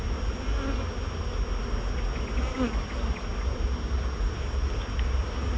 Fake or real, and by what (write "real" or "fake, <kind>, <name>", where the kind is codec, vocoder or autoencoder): real